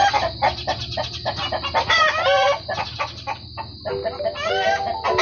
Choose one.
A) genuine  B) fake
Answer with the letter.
A